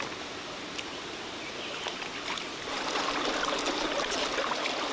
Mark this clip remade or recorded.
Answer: recorded